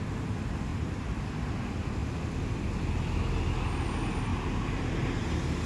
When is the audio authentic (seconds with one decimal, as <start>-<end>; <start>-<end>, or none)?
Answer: 0.0-0.7; 1.2-4.3; 4.9-5.7